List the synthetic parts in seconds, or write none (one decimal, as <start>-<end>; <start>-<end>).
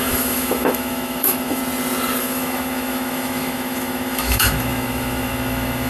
0.0-1.6; 2.2-5.9